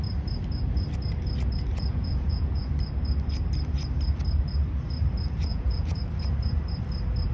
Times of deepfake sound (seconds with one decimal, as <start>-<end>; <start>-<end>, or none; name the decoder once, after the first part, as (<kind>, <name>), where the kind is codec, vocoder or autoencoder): 1.7-2.7 (vocoder, Vocos); 5.5-6.0